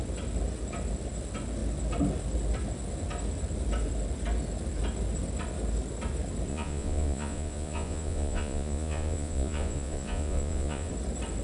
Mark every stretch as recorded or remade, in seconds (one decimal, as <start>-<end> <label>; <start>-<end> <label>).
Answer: 0.0-6.5 recorded; 6.5-10.9 remade; 10.9-11.4 recorded

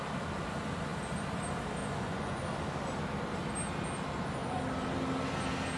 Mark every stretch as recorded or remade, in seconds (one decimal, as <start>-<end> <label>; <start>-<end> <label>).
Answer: 0.0-1.8 recorded; 1.8-2.4 remade; 2.4-5.8 recorded

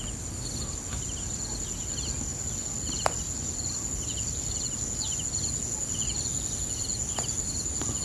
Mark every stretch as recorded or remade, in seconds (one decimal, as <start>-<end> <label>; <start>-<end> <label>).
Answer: 0.0-8.0 recorded

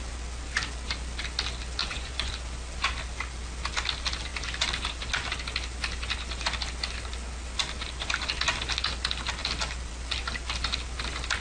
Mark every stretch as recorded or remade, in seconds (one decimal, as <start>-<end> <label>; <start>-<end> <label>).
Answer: 0.0-1.8 recorded; 1.8-2.3 remade; 2.3-11.4 recorded

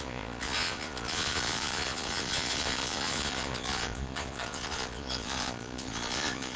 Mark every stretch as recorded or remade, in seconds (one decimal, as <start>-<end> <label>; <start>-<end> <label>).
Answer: 0.0-6.6 remade

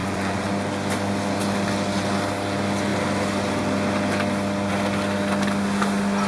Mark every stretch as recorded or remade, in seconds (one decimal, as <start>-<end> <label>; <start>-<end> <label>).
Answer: 0.0-0.5 remade; 0.5-6.3 recorded

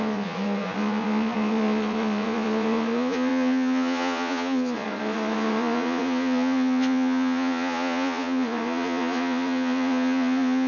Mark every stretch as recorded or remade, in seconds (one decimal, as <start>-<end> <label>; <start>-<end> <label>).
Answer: 0.0-10.7 remade

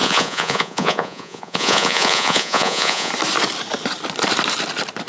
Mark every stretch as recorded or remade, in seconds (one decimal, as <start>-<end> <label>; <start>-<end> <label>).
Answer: 0.0-3.1 remade; 3.1-5.1 recorded